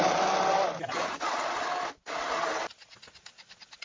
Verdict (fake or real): real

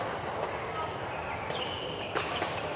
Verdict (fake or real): real